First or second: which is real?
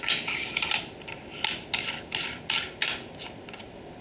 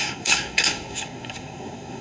first